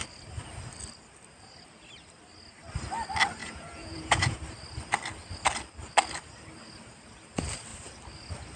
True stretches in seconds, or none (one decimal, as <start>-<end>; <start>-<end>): 0.0-3.4; 4.4-8.6